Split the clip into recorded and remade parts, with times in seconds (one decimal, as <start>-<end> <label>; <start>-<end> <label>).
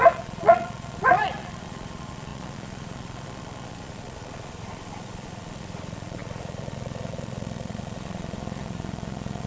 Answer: 0.0-9.5 remade